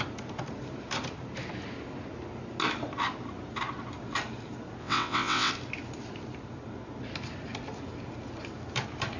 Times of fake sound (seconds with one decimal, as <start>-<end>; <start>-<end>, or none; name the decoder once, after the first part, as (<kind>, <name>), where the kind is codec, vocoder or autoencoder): 4.8-5.5 (vocoder, WaveNeXt)